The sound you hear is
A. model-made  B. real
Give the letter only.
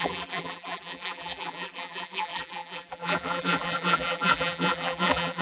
A